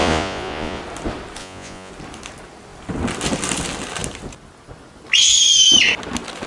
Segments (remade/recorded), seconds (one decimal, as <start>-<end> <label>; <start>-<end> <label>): 0.0-0.8 remade; 0.8-1.4 recorded; 1.4-1.9 remade; 1.9-6.5 recorded